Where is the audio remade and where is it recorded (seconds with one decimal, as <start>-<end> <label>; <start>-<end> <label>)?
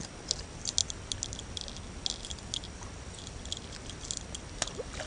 0.0-5.1 recorded